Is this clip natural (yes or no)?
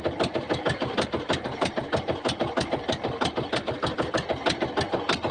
yes